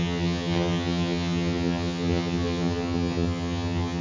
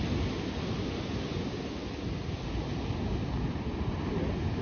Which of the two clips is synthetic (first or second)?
first